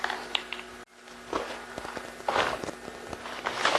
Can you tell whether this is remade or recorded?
recorded